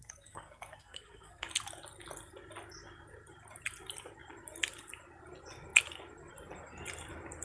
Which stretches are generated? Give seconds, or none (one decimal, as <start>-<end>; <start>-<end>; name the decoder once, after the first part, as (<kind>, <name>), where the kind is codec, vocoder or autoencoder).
0.0-1.5 (codec, SNAC)